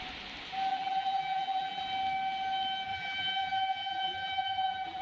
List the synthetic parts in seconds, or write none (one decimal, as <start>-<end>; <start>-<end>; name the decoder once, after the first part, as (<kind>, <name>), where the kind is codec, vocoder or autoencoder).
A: 0.7-1.8 (vocoder, BigVGAN v2); 2.9-5.0